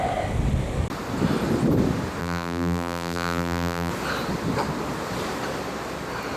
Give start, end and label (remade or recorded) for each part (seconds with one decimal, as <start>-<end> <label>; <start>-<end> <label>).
0.0-2.2 recorded; 2.2-3.9 remade; 3.9-6.4 recorded